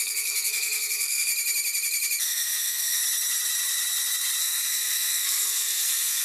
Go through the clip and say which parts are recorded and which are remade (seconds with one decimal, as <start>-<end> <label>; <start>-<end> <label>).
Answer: 0.0-1.3 remade; 1.3-2.2 recorded; 2.2-3.0 remade; 3.0-4.4 recorded; 4.4-6.2 remade